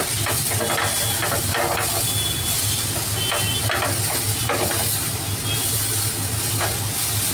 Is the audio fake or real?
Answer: real